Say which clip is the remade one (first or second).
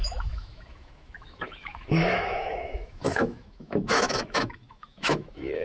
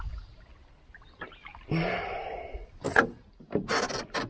first